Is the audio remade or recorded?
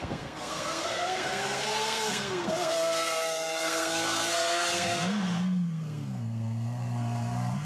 remade